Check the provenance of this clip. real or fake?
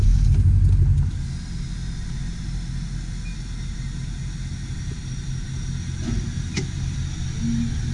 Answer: real